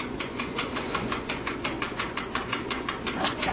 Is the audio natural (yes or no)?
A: no